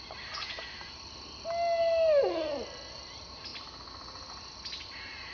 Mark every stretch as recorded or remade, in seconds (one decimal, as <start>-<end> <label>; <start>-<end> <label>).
0.0-5.3 recorded